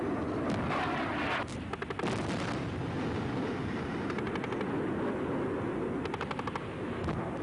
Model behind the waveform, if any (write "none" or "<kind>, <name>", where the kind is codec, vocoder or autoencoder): none